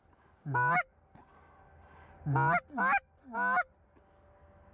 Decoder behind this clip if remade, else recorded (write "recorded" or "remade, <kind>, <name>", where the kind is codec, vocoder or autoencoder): recorded